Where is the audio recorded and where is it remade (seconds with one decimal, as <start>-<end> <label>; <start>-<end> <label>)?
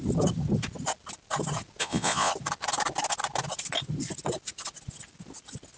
0.0-1.8 recorded; 1.8-2.3 remade; 2.3-5.8 recorded